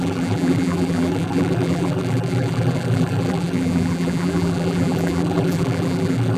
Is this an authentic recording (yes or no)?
no